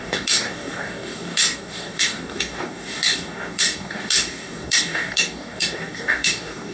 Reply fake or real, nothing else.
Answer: fake